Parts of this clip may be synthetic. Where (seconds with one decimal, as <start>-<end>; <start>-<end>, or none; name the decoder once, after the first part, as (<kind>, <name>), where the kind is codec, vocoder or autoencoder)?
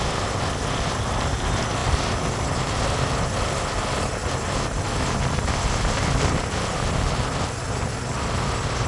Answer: 1.8-2.5 (vocoder, BigVGAN v2)